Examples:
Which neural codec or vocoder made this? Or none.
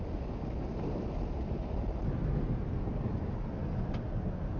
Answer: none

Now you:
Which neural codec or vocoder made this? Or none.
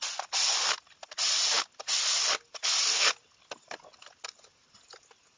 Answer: none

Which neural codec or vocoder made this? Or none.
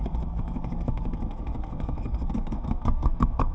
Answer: codec, SNAC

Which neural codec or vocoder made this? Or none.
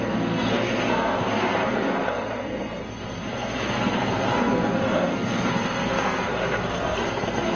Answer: codec, SNAC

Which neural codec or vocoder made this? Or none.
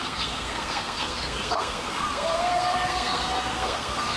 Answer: codec, SNAC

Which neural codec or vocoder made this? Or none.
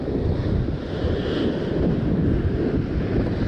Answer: none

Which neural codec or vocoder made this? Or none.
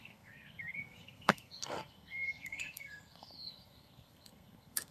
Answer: codec, SNAC